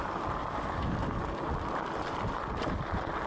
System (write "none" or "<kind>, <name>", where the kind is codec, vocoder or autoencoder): none